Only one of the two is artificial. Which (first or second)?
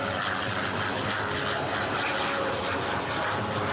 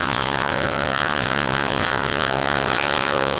second